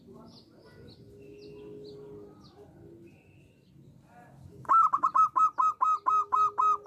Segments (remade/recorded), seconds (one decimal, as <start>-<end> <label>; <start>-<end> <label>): 0.0-6.9 recorded